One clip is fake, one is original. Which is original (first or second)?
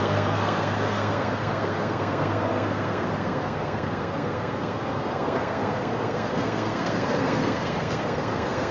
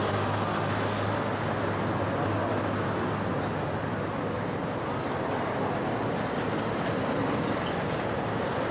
second